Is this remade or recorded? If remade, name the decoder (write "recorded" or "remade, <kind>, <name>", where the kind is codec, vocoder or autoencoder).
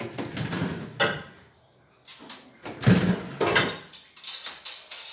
recorded